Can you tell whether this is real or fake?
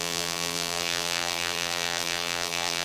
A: fake